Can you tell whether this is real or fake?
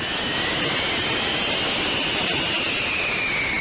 real